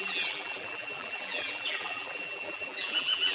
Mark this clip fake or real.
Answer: fake